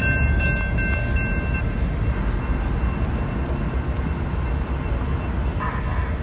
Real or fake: real